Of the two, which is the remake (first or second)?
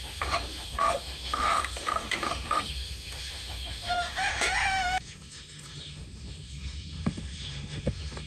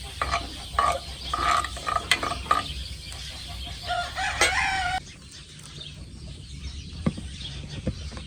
first